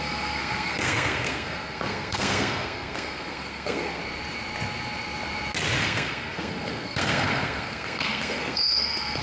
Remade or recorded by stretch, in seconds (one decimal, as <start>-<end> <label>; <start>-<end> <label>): 0.0-4.0 remade; 4.0-5.8 recorded; 5.8-9.2 remade

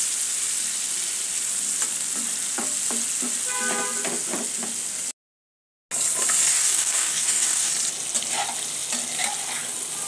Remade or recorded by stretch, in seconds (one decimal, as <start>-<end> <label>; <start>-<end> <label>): 0.0-6.5 recorded; 6.5-7.7 remade; 7.7-10.1 recorded

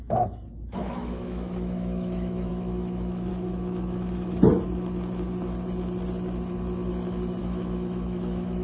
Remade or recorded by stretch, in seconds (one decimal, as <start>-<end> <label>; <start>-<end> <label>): 0.0-4.5 remade; 4.5-7.4 recorded; 7.4-8.6 remade

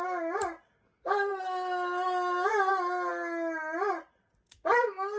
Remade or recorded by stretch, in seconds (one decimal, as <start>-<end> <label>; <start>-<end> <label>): 0.0-5.2 recorded

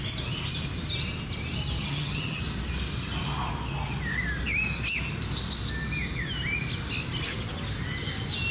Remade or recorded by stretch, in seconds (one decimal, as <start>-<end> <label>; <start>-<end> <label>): 0.0-1.8 recorded; 1.8-2.4 remade; 2.4-8.5 recorded

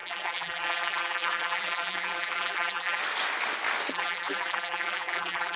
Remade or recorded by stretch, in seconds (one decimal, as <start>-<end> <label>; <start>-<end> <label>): 0.0-3.0 remade; 3.0-3.9 recorded; 3.9-5.6 remade

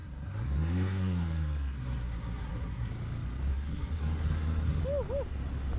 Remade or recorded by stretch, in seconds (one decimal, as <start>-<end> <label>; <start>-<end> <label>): 0.0-2.9 remade; 2.9-3.5 recorded; 3.5-4.8 remade; 4.8-5.8 recorded

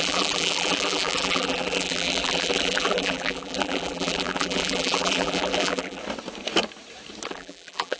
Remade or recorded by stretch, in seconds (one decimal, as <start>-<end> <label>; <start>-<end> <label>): 0.0-6.0 remade; 6.0-7.3 recorded; 7.3-8.0 remade